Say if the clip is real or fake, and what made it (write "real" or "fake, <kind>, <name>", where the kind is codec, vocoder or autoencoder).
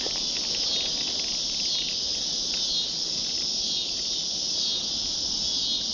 real